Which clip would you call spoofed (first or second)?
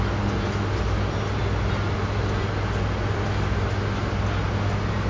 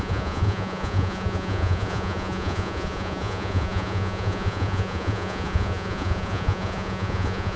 second